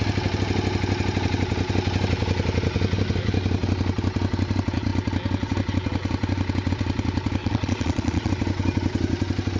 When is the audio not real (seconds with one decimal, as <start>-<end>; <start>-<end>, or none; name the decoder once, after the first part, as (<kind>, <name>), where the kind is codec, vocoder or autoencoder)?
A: 7.4-8.3 (vocoder, Vocos)